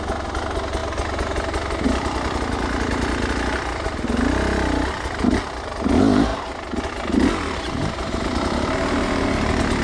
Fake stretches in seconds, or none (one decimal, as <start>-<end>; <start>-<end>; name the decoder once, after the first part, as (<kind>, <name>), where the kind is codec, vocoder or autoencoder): none